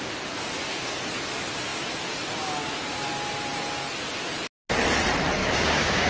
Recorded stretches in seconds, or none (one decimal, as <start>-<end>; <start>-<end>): 0.0-5.4